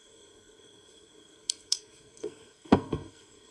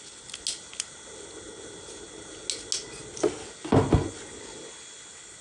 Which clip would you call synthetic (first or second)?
first